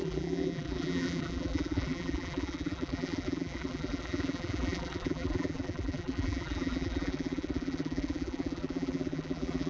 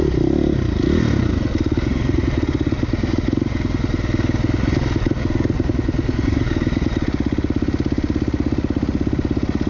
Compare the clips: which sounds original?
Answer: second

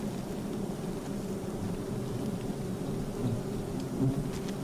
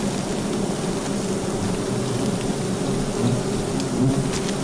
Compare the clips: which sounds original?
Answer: second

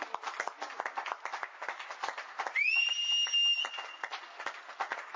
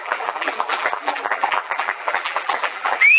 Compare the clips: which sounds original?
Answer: first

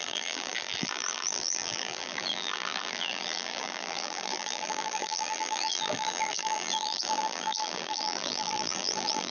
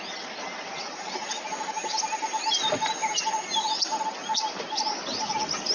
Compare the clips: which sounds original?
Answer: second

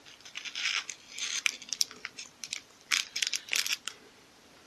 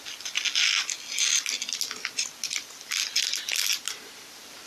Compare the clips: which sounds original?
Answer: second